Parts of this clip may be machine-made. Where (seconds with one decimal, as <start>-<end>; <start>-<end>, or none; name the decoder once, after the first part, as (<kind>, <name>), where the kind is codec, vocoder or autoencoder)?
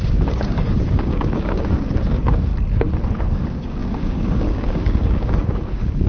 0.0-2.5 (codec, DAC); 3.2-6.1